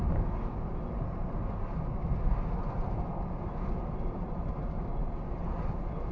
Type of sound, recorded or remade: recorded